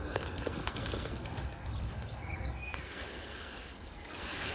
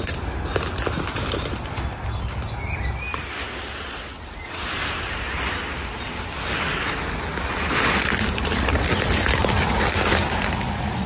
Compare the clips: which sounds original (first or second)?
second